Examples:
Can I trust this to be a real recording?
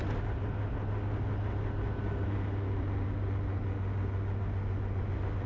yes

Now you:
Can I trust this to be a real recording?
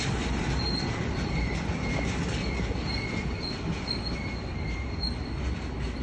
yes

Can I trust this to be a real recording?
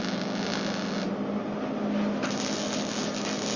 yes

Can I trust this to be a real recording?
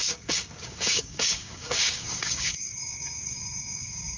no